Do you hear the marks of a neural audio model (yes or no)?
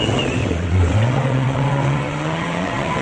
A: yes